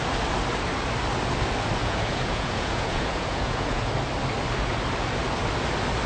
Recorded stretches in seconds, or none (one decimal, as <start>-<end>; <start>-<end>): 0.0-1.8; 3.9-6.1